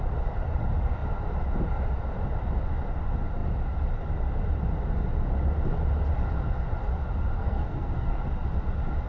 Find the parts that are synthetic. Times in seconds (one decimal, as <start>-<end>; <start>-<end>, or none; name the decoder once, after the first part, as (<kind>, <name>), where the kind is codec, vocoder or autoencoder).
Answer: 7.4-8.2 (codec, SNAC)